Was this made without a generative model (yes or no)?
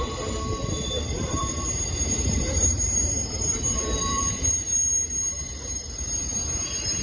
no